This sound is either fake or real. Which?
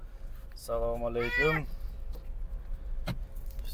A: real